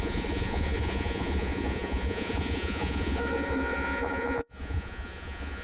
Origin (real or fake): fake